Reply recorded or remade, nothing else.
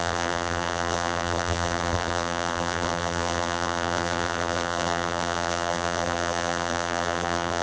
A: remade